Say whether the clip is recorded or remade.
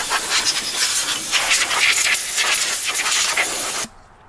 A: recorded